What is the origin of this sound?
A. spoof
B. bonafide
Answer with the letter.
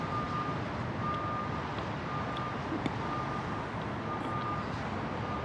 B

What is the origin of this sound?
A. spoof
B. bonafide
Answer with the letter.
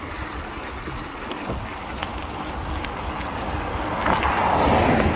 B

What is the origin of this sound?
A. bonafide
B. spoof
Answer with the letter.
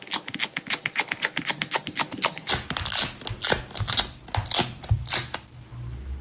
A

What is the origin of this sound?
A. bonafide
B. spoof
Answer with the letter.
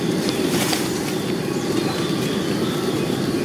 B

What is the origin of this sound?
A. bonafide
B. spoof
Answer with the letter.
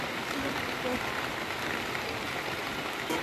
A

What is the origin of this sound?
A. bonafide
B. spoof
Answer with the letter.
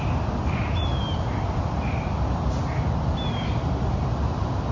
A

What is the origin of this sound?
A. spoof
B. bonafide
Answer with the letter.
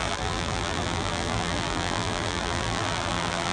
A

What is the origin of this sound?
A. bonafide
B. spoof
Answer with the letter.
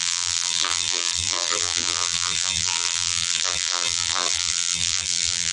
B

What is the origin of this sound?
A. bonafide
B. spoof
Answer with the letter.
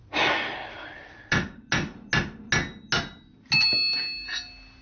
A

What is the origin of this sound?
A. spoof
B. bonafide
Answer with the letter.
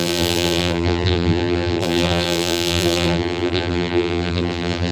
A